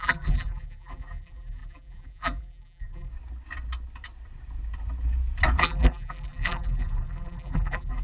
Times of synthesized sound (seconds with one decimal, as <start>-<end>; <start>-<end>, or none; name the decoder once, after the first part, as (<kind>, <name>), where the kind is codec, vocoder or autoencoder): 0.0-3.1 (vocoder, BigVGAN v2); 5.6-8.0